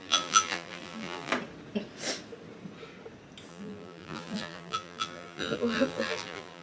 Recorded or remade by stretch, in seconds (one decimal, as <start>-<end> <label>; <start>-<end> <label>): 0.0-1.3 remade; 1.3-3.5 recorded; 3.5-6.6 remade